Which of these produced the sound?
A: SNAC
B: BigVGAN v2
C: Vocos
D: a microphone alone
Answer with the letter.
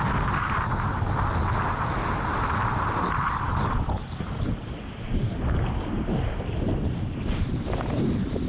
D